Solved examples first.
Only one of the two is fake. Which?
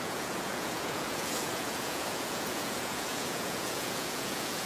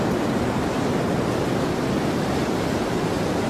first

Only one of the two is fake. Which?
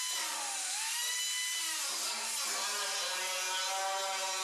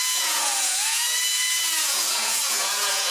second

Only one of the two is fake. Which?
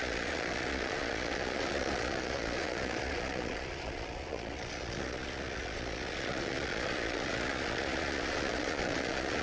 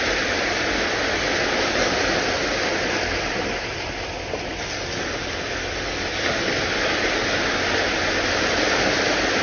first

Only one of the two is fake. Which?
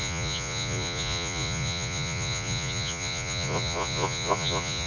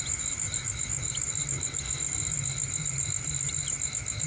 first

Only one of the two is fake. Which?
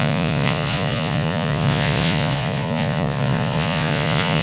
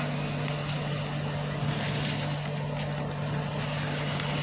first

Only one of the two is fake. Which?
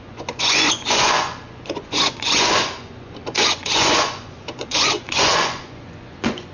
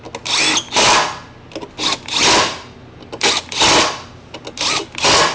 first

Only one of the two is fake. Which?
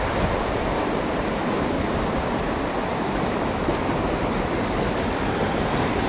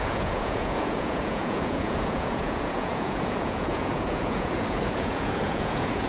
second